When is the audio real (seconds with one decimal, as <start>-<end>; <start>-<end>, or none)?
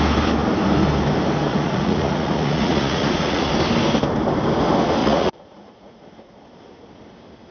0.0-1.5; 3.5-5.0; 6.4-7.5